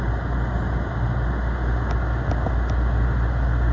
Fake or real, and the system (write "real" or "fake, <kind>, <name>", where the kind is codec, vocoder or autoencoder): real